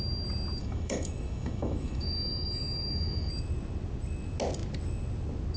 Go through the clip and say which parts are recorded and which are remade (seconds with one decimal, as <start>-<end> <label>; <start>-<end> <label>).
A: 0.0-0.6 recorded; 0.6-3.3 remade; 3.3-5.6 recorded